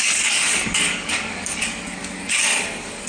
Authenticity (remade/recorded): remade